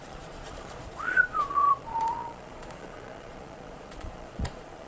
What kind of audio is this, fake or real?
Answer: fake